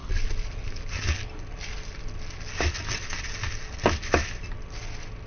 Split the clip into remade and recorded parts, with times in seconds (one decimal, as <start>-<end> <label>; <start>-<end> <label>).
0.0-5.3 recorded